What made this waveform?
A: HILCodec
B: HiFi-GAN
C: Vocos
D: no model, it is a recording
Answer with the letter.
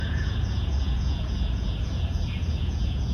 C